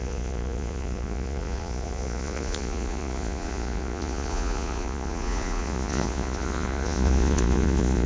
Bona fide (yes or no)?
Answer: no